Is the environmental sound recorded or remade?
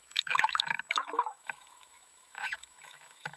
remade